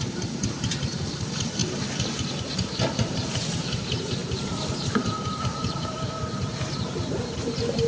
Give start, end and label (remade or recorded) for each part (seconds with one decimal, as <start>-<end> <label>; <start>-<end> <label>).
0.0-7.9 remade